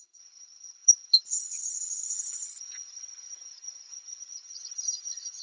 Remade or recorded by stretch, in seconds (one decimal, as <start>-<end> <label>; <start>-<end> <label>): 0.0-5.4 remade